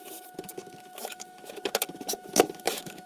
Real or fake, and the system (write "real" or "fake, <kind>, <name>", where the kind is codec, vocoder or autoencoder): fake, autoencoder, DAC-VAE